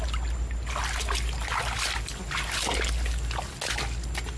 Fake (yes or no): no